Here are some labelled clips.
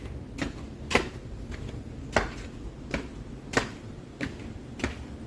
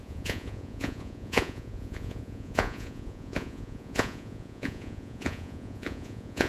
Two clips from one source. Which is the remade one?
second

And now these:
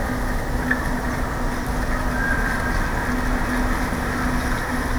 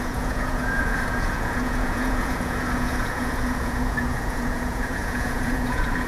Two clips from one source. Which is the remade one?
second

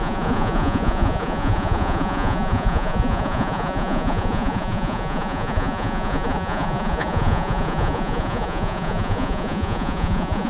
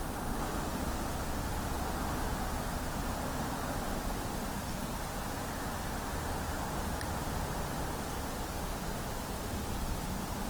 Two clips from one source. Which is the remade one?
first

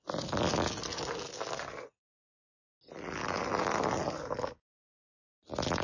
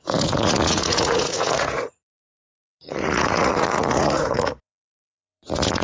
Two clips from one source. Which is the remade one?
second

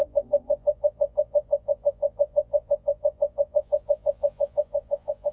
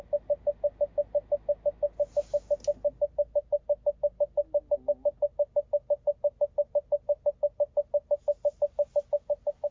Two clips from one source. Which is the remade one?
first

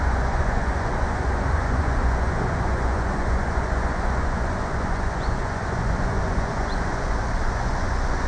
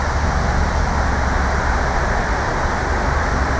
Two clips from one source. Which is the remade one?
first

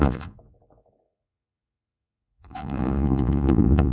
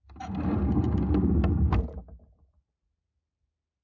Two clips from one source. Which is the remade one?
first